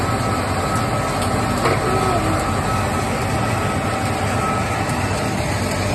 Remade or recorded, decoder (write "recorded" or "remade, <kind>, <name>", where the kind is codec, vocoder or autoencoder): recorded